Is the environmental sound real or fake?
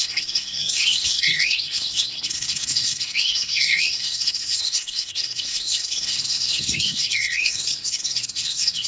fake